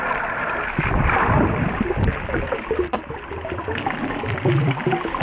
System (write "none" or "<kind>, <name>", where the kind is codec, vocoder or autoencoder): none